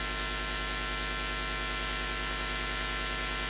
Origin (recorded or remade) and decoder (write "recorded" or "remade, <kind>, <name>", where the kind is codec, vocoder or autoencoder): recorded